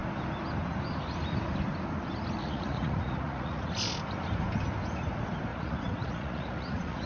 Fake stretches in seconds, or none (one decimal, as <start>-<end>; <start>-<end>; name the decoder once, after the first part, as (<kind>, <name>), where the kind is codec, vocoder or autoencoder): 2.4-3.7 (vocoder, Vocos); 5.5-7.1